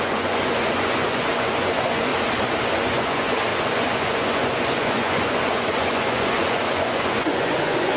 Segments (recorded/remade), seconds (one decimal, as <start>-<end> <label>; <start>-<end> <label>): 0.0-2.1 remade; 2.1-2.7 recorded; 2.7-8.0 remade